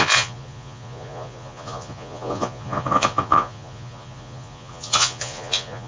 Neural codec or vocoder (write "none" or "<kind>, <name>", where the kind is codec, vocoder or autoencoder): vocoder, Vocos